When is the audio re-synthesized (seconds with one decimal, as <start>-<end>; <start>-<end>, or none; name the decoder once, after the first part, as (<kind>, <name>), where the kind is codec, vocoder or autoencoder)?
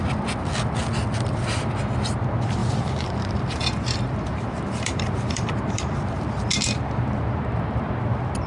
2.6-6.3 (vocoder, BigVGAN v2)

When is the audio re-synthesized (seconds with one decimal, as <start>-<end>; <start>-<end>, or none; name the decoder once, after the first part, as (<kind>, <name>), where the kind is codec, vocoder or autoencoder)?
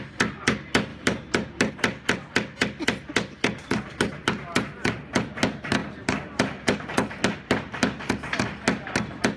0.9-1.7 (vocoder, BigVGAN v2); 5.8-7.2